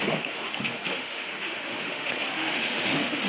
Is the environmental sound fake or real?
fake